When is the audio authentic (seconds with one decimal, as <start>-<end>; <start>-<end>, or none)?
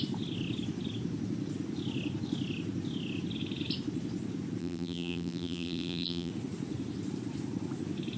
0.0-4.6; 6.3-8.2